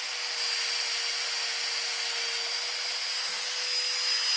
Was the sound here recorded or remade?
recorded